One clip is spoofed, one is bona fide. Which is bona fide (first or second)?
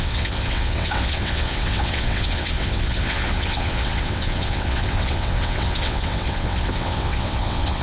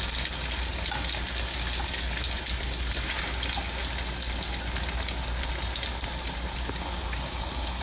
second